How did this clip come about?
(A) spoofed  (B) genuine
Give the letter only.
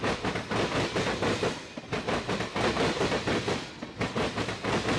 B